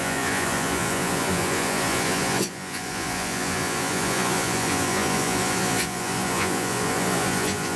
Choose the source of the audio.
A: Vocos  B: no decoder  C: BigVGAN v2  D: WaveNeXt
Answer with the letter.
A